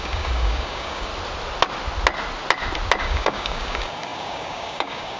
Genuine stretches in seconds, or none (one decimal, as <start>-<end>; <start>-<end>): 1.1-3.0

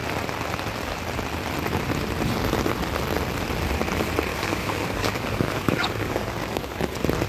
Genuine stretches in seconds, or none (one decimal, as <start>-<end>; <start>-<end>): 0.0-4.3; 6.8-7.3